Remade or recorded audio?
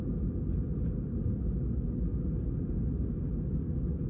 recorded